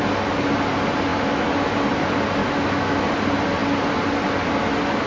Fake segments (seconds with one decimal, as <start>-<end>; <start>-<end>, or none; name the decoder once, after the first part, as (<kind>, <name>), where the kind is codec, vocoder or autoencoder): 2.4-3.1 (autoencoder, DAC-VAE)